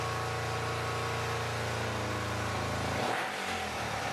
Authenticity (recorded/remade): recorded